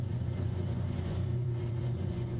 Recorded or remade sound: remade